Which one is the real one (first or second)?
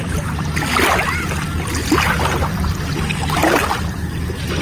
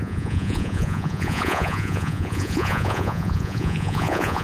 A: first